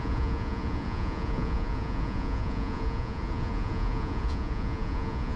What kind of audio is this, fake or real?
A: fake